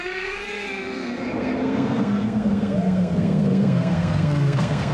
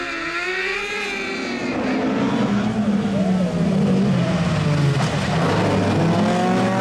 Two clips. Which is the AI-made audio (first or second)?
first